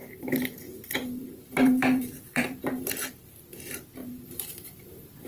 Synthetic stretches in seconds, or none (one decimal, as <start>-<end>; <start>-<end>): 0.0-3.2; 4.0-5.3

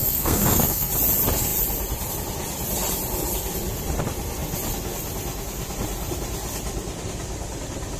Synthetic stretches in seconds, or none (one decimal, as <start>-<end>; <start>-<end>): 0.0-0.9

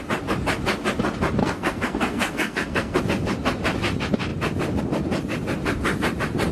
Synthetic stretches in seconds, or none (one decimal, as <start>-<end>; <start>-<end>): 1.4-3.0

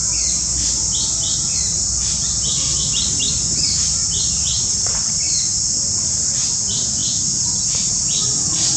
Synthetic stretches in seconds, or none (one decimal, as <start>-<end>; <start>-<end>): 4.5-5.2

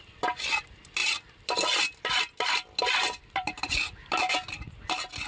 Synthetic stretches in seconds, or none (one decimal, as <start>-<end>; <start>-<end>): none